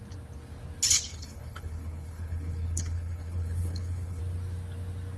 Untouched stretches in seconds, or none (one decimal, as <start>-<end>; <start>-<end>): 0.0-1.1; 4.2-5.2